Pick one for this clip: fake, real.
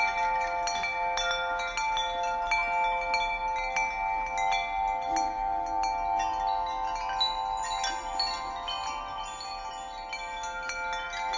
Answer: real